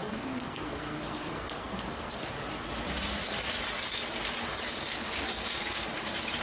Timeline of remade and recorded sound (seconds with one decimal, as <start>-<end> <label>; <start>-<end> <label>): 0.0-2.2 remade; 2.2-6.4 recorded